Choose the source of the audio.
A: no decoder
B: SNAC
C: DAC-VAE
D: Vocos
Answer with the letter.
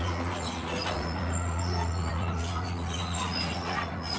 D